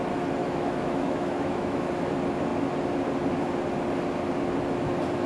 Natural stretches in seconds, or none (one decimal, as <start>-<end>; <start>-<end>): 0.0-0.4; 1.8-5.3